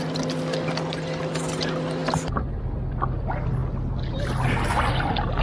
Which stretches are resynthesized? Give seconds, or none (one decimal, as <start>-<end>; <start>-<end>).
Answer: none